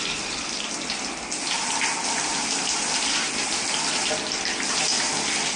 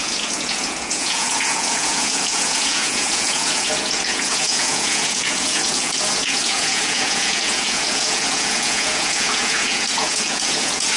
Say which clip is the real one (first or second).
first